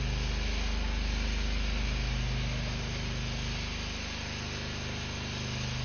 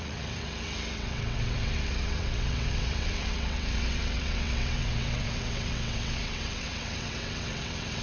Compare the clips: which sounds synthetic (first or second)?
second